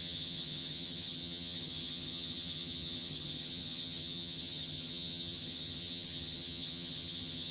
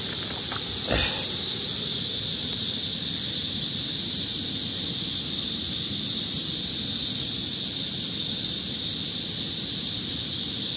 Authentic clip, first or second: second